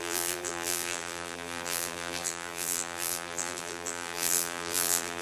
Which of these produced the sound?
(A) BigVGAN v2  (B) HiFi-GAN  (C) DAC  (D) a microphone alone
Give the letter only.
A